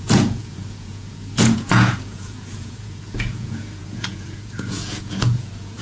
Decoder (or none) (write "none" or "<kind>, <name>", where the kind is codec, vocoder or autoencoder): vocoder, Vocos